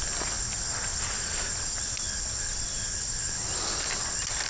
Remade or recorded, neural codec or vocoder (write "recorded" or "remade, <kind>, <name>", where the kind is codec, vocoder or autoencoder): recorded